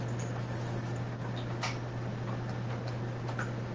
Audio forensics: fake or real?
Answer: real